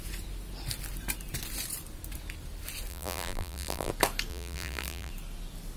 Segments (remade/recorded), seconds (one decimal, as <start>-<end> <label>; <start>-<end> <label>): 0.0-2.9 recorded; 2.9-3.9 remade; 3.9-4.3 recorded; 4.3-5.1 remade; 5.1-5.8 recorded